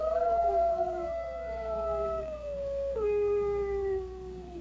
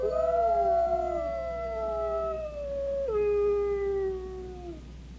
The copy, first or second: first